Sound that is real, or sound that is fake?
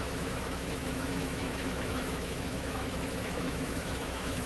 fake